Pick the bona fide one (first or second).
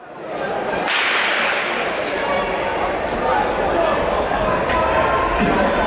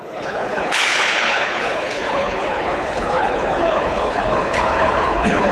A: first